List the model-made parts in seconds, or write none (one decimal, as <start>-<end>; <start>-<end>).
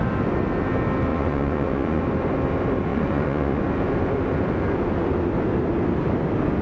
1.1-2.0; 2.9-3.6